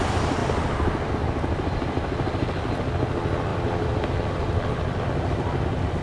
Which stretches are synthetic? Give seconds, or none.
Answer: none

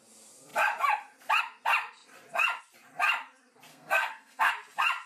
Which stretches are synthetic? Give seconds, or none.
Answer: 3.7-4.5

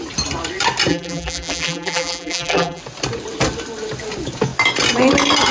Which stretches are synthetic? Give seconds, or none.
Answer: 0.9-2.8

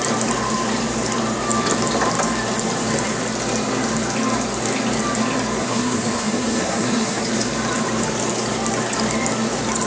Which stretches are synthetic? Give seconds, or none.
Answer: 5.6-7.2

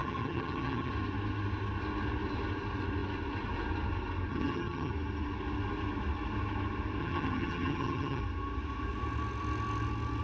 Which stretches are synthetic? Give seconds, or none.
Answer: 0.0-0.9; 4.3-4.9; 7.0-8.2

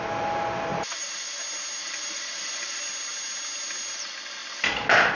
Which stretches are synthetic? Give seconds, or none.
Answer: 0.7-1.4; 1.8-2.8

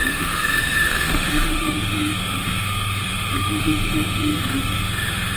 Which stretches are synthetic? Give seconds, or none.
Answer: 0.0-5.4